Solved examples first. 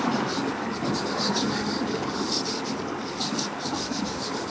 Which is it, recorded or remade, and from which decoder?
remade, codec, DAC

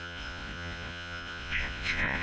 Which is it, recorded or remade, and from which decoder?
remade, vocoder, Vocos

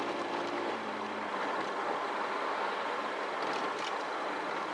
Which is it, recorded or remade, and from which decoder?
recorded